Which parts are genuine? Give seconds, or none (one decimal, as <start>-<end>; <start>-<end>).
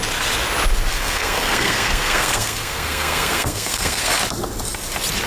0.0-0.9; 4.1-5.3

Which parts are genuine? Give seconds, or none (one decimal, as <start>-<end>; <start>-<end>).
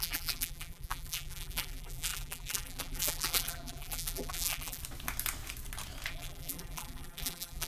4.8-6.1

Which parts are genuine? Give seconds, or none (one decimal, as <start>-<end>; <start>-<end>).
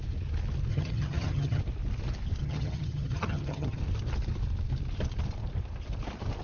0.0-0.7; 1.6-2.4; 3.8-6.4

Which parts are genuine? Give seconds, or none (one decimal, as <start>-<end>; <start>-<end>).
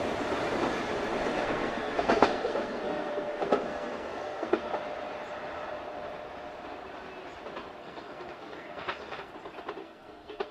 0.0-1.3; 4.7-7.8; 9.3-9.8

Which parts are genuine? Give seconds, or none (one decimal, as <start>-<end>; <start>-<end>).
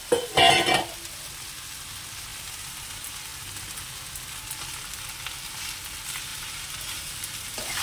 0.0-6.3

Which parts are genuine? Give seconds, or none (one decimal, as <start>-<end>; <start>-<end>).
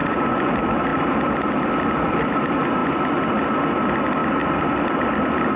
0.5-5.6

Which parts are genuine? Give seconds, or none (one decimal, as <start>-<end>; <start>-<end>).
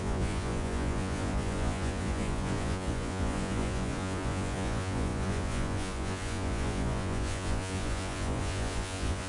none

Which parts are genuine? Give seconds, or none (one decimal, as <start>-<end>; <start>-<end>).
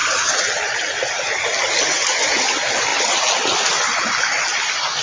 1.7-2.9; 3.6-5.0